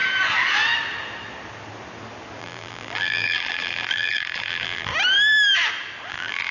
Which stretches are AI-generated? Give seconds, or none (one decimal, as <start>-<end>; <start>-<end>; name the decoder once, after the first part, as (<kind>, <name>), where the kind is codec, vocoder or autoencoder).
2.4-4.9 (vocoder, BigVGAN v2); 6.1-6.5